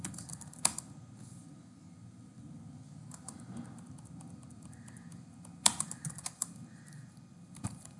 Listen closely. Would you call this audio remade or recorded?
recorded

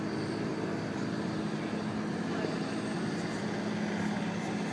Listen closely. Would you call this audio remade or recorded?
recorded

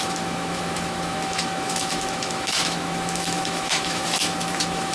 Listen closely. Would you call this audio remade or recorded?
remade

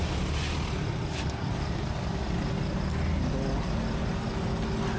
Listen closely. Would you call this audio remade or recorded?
recorded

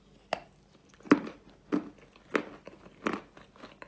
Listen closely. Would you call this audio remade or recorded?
recorded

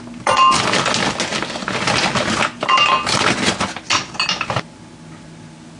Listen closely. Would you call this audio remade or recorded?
recorded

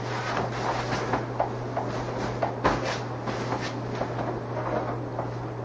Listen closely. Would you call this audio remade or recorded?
recorded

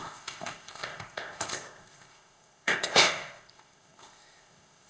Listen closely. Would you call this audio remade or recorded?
remade